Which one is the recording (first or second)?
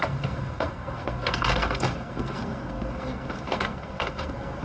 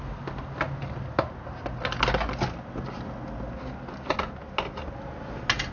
second